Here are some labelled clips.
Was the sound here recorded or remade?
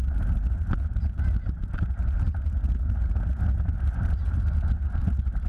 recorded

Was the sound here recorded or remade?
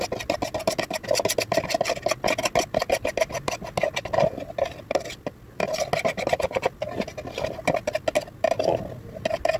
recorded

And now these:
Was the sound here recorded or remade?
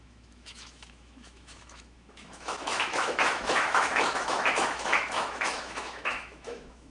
remade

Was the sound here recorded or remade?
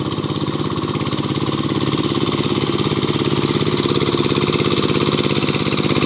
recorded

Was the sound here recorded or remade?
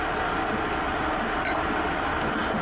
recorded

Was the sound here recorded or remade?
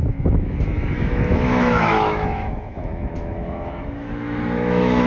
remade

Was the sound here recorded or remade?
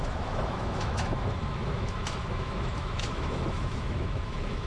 remade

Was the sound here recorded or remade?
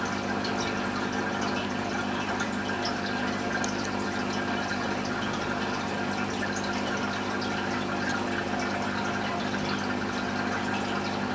recorded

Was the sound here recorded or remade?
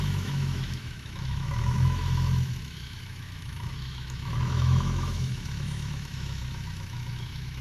remade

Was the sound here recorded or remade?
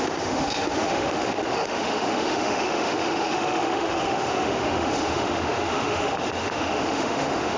remade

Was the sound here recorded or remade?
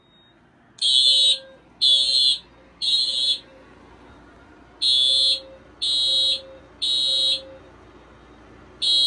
recorded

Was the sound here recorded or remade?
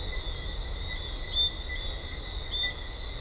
recorded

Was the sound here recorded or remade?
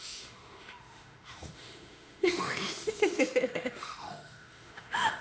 remade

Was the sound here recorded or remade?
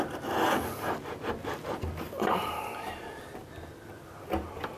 recorded